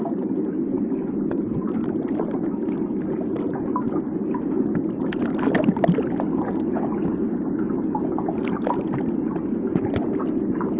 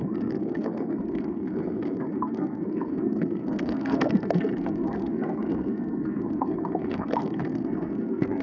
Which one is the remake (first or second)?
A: second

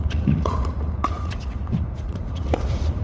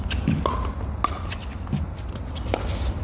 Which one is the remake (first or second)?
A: first